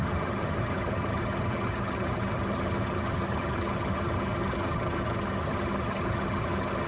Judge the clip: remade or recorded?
remade